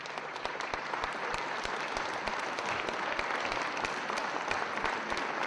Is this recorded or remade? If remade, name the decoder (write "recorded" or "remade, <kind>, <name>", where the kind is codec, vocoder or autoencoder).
recorded